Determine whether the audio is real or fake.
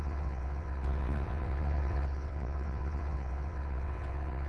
fake